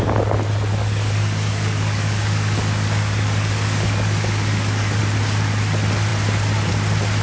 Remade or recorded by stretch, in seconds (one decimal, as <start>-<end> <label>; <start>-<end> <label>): 0.0-0.7 recorded; 0.7-5.0 remade; 5.0-7.2 recorded